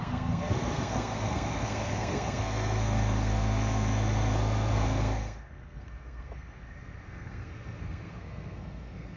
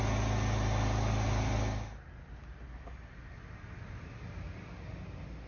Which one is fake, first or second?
first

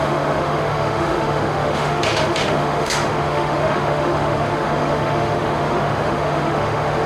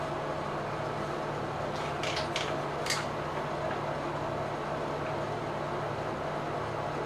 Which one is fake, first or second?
first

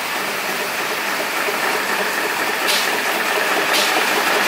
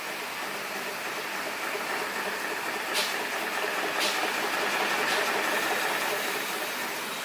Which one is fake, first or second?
first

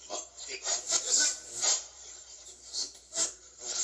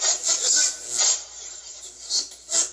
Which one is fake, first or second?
first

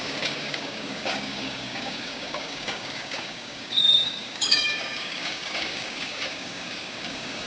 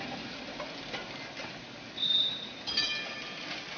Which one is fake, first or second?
first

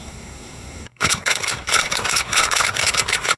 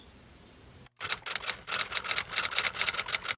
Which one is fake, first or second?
first